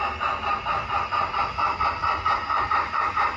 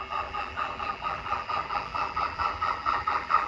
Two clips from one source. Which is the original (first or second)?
first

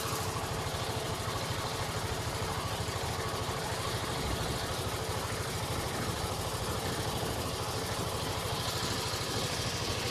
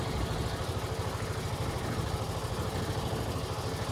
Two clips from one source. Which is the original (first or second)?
second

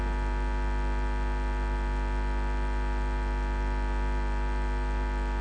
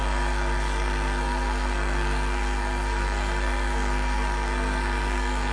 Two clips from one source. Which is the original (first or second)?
first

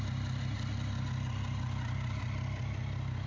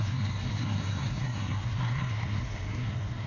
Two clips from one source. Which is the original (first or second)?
first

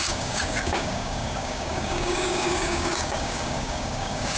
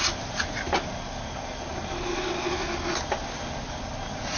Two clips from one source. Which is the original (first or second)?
second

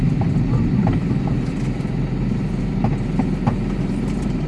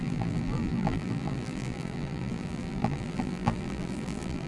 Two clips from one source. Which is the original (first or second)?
first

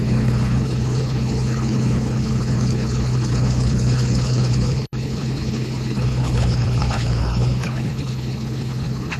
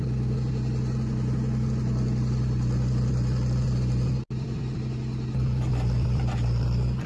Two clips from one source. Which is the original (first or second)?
second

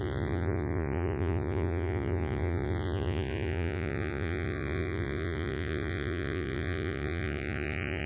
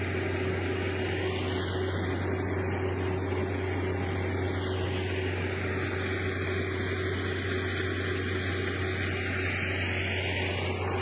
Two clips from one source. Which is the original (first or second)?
second